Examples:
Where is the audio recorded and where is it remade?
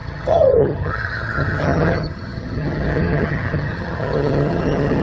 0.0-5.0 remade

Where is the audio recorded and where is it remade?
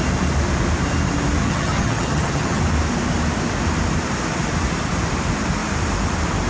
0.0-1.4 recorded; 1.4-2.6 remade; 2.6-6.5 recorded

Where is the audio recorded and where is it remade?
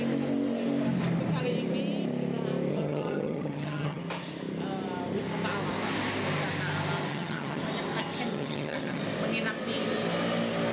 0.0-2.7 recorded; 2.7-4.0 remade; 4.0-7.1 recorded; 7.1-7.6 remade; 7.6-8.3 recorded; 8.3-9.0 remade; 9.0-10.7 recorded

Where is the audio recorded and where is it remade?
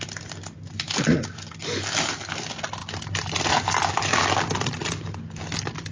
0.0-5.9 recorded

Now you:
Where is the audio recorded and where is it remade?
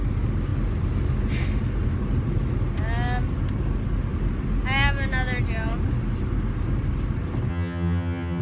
0.0-7.5 recorded; 7.5-8.4 remade